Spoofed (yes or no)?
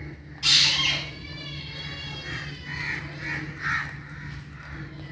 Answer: no